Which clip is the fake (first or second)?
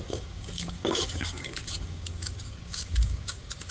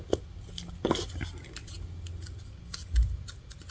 first